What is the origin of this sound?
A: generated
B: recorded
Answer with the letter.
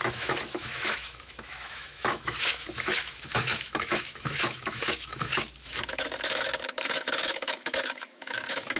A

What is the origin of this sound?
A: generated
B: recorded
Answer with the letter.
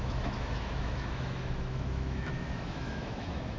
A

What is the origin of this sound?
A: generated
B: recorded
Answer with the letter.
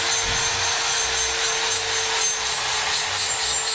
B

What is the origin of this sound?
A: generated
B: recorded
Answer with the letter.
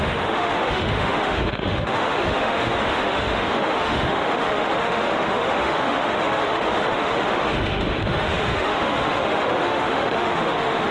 A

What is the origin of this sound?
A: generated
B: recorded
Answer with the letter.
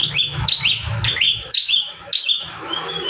A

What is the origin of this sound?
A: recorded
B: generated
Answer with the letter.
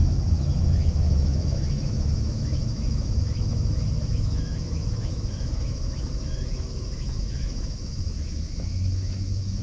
B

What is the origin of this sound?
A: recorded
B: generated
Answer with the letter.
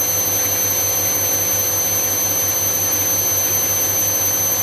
A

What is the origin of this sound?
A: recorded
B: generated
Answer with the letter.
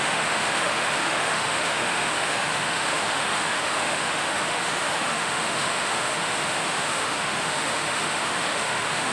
B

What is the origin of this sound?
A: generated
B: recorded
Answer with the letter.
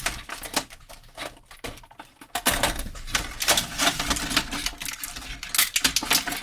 B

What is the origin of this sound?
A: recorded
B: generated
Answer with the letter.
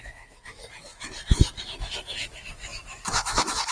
B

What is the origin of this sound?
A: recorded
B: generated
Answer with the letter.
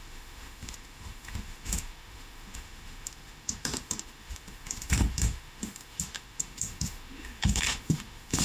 B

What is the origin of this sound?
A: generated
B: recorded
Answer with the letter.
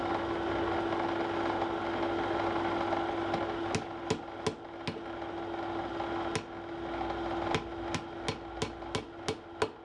B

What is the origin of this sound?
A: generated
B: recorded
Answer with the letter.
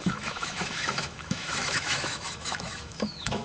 A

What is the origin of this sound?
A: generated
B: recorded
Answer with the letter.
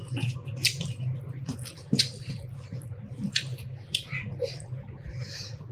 B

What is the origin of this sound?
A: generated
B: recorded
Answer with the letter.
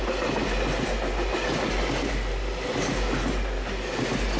B